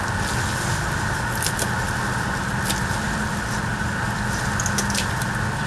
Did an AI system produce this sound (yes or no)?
no